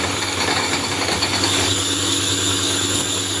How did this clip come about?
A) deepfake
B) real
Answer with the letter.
A